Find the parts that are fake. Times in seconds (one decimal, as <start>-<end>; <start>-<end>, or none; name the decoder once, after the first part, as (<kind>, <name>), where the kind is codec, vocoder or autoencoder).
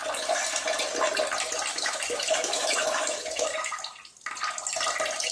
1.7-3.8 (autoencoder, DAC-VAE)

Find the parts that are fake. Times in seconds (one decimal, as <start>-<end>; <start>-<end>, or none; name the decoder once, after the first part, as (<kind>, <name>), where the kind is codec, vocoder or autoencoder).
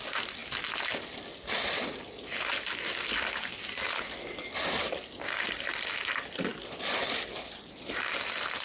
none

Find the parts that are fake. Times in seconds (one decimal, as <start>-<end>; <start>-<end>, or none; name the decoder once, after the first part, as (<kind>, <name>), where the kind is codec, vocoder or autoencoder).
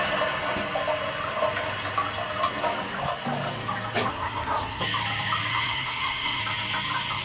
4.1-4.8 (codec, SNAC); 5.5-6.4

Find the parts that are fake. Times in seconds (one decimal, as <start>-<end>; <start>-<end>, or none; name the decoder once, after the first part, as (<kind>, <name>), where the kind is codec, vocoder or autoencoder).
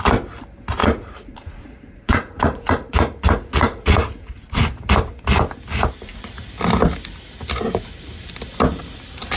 0.8-4.8 (vocoder, Vocos)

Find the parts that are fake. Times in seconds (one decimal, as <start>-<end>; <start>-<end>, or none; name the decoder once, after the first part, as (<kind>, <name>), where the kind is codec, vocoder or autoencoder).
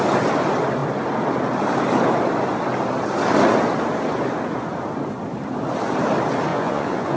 6.5-7.2 (vocoder, Vocos)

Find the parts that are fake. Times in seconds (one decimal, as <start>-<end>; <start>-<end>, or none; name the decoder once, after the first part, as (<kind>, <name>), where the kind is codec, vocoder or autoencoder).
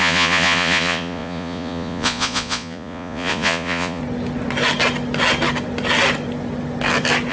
0.0-4.0 (vocoder, Vocos)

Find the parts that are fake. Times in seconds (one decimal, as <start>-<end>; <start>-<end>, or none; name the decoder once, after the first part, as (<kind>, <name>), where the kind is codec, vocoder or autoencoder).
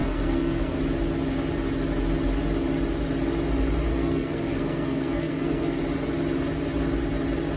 0.0-0.8 (codec, SNAC); 3.9-5.8